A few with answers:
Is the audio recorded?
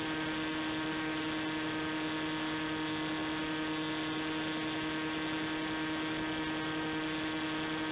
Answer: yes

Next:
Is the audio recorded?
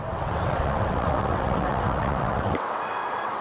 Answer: no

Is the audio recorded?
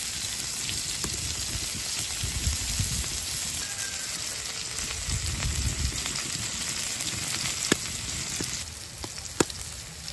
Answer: yes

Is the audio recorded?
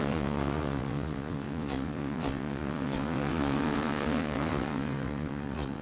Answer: no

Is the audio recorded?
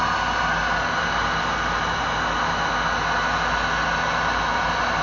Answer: yes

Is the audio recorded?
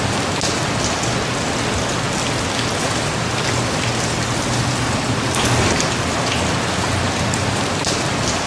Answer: yes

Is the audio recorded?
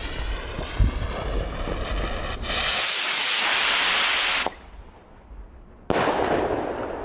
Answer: yes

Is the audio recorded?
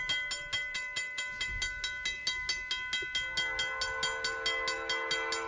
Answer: yes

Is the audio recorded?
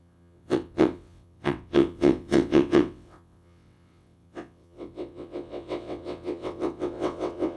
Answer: no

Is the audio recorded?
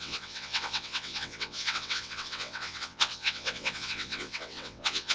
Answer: no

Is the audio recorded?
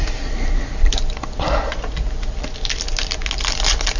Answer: yes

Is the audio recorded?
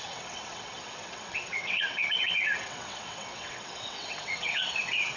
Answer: no